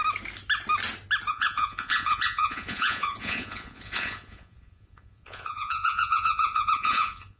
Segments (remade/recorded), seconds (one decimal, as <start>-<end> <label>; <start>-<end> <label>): 0.0-1.3 recorded; 1.3-7.4 remade